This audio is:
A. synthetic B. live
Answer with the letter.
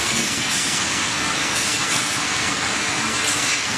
A